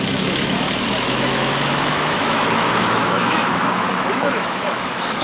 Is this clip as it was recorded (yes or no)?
no